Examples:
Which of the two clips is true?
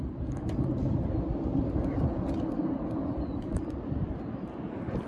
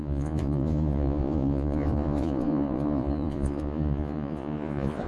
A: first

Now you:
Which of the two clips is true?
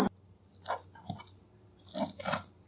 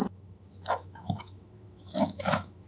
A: first